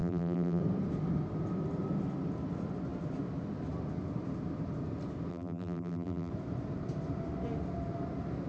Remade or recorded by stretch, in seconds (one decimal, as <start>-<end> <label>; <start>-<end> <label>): 0.0-0.6 remade; 0.6-5.3 recorded; 5.3-6.3 remade; 6.3-8.5 recorded